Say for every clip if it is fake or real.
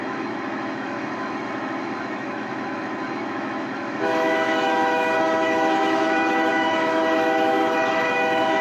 fake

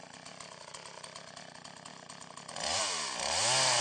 real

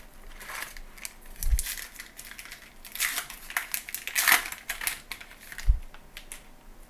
real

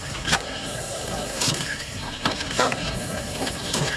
fake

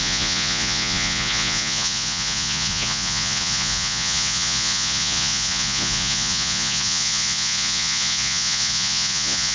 fake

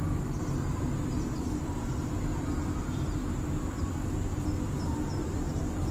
real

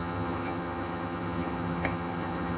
fake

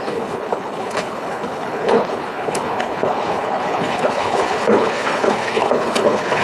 fake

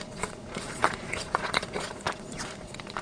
fake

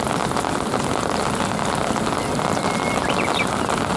real